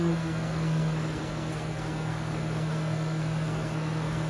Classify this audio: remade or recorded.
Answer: remade